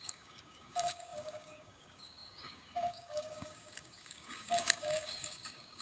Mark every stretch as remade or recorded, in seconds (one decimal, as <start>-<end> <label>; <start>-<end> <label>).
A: 0.0-5.8 remade